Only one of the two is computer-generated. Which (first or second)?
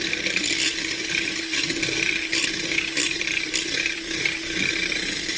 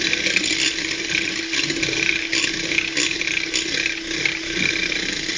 first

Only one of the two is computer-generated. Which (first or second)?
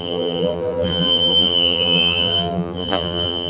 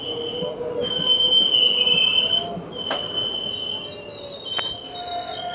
first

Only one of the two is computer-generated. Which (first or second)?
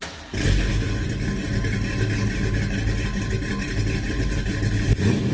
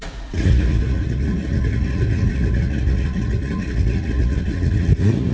second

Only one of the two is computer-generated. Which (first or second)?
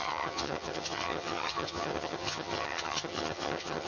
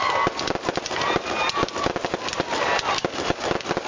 first